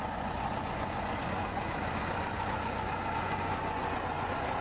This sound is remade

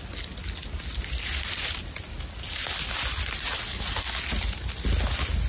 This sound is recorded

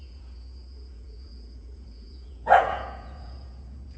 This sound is remade